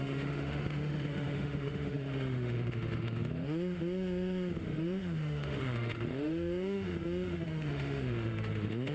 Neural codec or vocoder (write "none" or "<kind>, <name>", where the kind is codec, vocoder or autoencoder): autoencoder, DAC-VAE